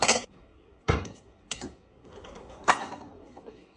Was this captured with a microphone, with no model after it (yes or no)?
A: no